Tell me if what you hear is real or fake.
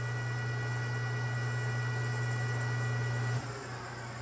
real